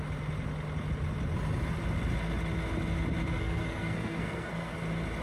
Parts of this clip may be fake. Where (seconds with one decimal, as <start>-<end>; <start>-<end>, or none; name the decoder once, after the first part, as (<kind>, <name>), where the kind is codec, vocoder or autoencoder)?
3.3-4.7 (codec, SNAC)